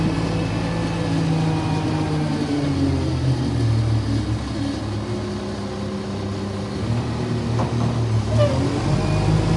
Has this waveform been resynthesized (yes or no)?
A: no